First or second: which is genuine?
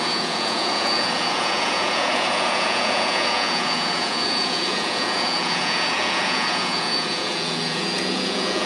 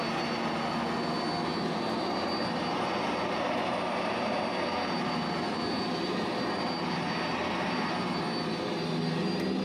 second